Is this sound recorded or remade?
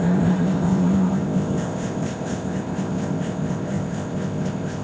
remade